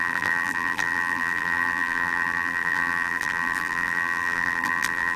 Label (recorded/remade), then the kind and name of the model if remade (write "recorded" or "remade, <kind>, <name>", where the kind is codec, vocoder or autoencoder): remade, vocoder, BigVGAN v2